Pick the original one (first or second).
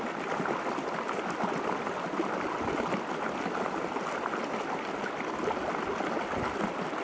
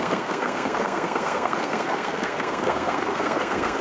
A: first